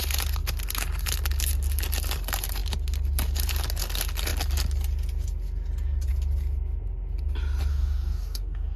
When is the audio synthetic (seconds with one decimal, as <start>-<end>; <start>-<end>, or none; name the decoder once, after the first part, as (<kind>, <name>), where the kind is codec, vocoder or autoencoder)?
7.7-8.8 (codec, DAC)